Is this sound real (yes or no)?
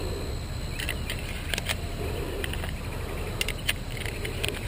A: yes